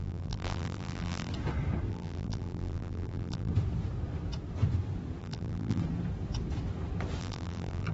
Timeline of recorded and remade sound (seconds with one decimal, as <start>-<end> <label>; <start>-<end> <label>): 0.0-1.3 remade; 1.3-1.9 recorded; 1.9-3.5 remade; 3.5-5.2 recorded; 5.2-5.8 remade; 5.8-7.2 recorded; 7.2-7.9 remade